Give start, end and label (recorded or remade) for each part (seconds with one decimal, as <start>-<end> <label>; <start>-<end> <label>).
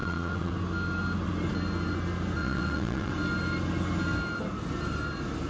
0.0-0.5 remade; 0.5-2.4 recorded; 2.4-3.1 remade; 3.1-5.5 recorded